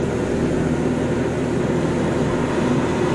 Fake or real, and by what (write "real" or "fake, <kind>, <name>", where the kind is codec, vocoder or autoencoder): real